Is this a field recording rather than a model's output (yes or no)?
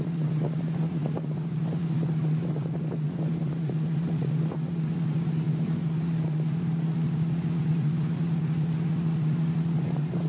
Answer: no